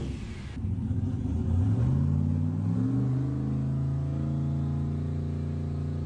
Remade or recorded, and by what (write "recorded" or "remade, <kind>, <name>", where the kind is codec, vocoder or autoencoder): recorded